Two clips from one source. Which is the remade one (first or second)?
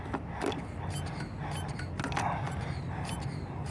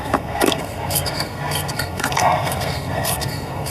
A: second